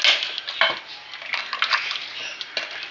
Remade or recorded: recorded